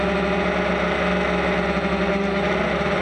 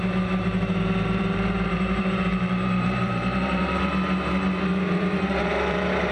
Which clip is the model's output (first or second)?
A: second